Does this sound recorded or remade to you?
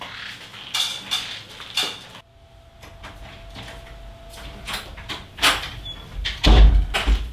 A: recorded